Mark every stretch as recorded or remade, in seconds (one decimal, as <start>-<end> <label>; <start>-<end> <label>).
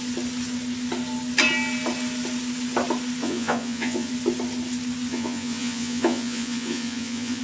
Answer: 0.0-3.2 recorded; 3.2-4.1 remade; 4.1-5.1 recorded; 5.1-7.4 remade